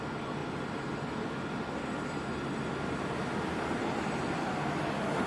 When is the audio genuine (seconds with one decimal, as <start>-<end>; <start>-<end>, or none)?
0.0-5.3